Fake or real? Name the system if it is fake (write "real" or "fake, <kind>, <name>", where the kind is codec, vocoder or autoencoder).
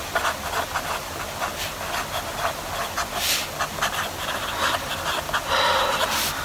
real